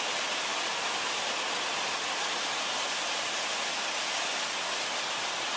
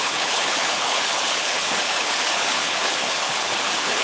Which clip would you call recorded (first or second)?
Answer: first